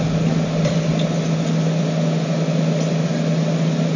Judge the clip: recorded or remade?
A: recorded